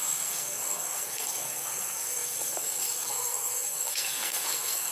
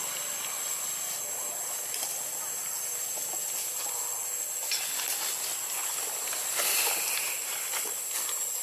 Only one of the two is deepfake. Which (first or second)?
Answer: first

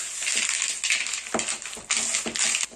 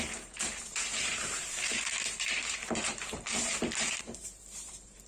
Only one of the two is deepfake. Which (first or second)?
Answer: second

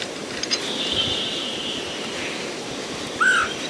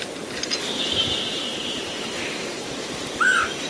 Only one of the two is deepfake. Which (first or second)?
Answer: second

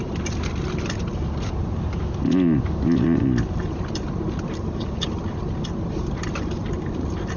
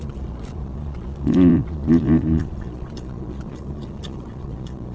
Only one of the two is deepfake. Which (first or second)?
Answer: second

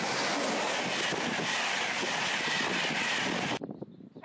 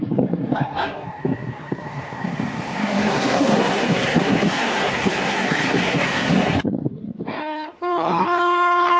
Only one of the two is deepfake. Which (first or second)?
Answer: second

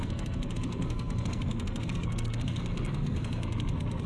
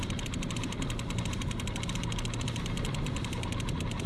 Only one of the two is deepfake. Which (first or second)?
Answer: first